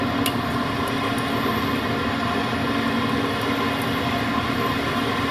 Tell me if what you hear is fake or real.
real